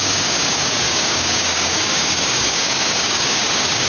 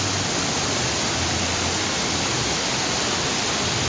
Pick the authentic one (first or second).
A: second